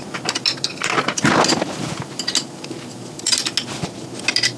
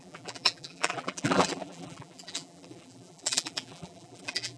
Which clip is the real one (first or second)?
first